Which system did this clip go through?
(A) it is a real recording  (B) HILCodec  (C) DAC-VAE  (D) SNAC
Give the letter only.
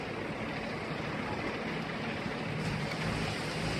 A